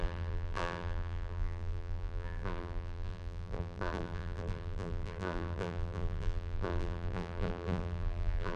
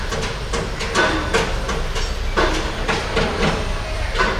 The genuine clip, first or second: second